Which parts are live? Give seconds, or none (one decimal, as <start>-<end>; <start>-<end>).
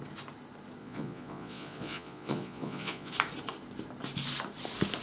0.0-0.8; 3.1-5.0